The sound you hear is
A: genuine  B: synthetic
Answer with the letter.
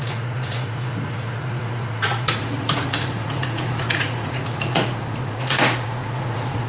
B